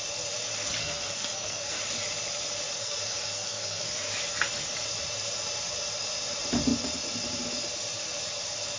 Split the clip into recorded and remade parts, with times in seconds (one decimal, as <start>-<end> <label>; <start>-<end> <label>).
0.0-0.8 recorded; 0.8-1.8 remade; 1.8-2.8 recorded; 2.8-4.1 remade; 4.1-8.8 recorded